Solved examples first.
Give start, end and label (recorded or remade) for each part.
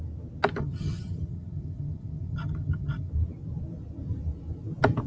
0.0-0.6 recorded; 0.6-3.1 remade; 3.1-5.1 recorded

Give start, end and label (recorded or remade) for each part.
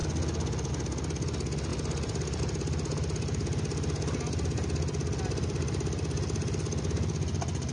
0.0-1.7 recorded; 1.7-2.4 remade; 2.4-7.7 recorded